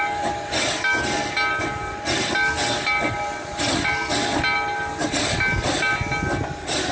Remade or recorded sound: recorded